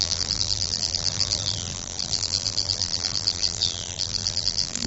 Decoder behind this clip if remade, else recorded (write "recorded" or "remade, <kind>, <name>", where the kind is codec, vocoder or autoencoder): remade, vocoder, BigVGAN v2